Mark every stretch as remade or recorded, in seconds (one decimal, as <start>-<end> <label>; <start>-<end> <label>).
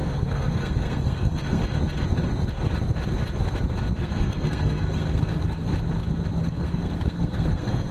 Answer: 0.0-1.6 remade; 1.6-4.0 recorded; 4.0-5.7 remade; 5.7-6.4 recorded; 6.4-7.9 remade